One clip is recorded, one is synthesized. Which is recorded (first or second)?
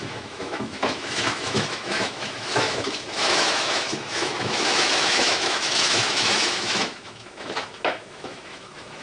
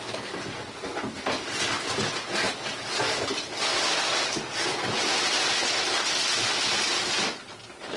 second